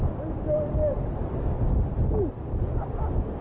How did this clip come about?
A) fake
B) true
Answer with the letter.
B